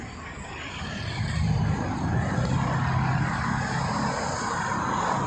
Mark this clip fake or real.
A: real